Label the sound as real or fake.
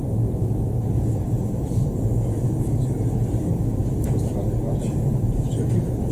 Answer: real